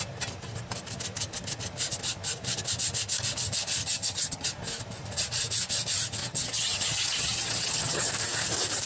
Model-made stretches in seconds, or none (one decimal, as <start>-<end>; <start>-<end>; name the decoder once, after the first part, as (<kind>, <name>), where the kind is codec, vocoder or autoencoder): 3.8-4.5 (vocoder, HiFi-GAN); 6.2-8.1